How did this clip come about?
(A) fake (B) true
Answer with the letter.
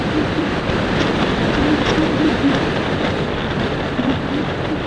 A